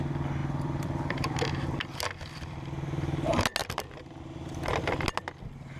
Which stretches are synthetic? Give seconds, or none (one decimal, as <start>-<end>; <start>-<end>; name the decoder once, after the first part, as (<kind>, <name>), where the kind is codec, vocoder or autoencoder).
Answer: 0.4-1.5 (vocoder, BigVGAN v2); 3.6-4.2